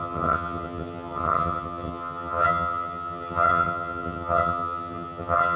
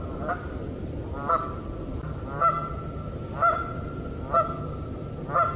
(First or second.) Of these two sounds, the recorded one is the second